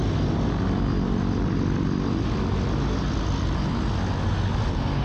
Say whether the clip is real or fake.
real